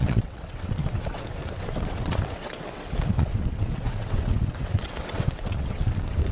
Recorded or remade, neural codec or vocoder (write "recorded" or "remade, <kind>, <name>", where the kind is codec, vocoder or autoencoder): remade, vocoder, WaveNeXt